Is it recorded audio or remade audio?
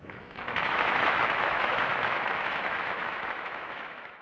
remade